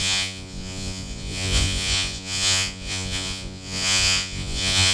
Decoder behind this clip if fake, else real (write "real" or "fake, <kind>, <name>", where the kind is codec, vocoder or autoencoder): fake, vocoder, Vocos